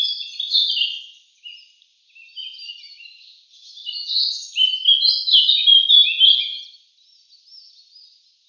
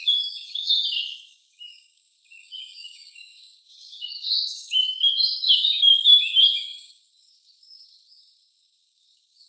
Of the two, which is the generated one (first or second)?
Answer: second